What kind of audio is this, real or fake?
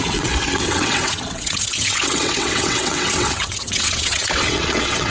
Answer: fake